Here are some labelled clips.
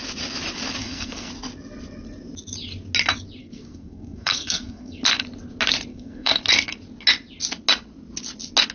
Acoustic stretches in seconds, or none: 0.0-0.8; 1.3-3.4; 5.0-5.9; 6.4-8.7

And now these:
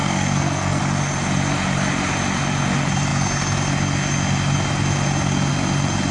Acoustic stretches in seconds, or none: 0.8-6.1